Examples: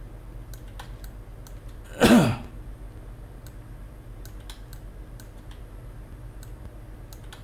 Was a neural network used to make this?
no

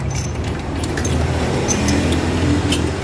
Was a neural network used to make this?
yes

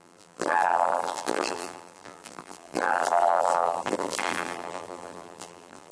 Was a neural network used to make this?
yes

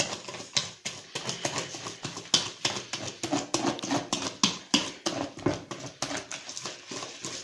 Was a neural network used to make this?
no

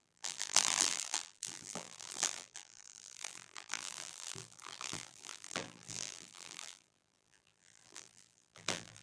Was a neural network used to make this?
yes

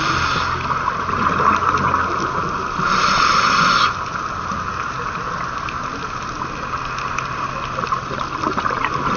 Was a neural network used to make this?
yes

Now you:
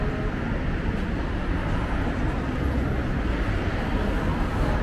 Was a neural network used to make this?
no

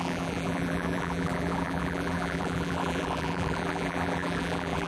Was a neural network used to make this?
yes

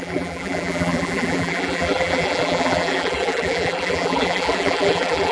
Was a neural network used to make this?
yes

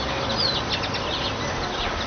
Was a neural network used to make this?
no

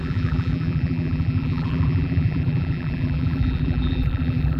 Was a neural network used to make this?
yes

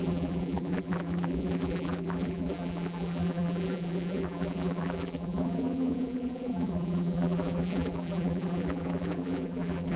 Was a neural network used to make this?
yes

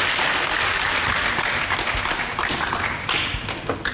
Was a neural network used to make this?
no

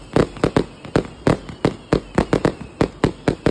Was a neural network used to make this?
no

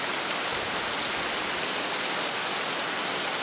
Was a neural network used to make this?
no